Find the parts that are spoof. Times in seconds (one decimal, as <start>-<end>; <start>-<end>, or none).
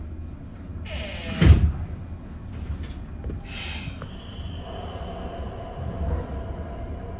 none